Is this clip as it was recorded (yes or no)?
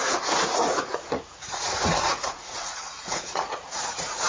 no